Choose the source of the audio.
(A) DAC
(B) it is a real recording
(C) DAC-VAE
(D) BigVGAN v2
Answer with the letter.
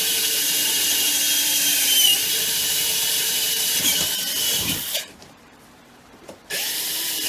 D